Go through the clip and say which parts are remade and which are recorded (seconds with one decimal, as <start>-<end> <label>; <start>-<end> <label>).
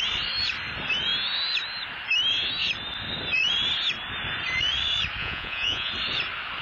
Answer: 0.0-5.2 recorded; 5.2-5.9 remade; 5.9-6.6 recorded